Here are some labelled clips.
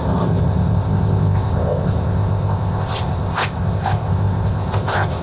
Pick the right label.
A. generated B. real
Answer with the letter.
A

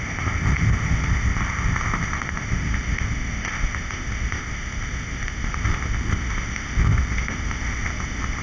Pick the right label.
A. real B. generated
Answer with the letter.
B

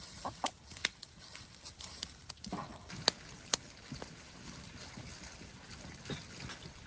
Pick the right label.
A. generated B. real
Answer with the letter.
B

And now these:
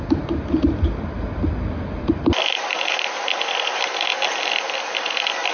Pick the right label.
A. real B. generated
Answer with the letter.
A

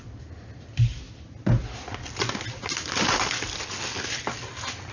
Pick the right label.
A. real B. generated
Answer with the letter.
A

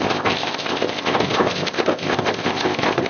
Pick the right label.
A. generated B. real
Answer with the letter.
A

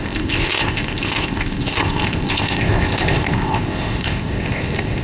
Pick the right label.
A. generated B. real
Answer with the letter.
A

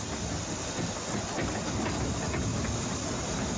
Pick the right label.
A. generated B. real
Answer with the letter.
B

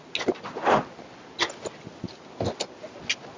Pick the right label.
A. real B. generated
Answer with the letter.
A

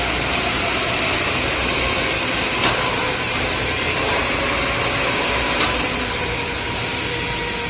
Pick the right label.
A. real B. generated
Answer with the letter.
A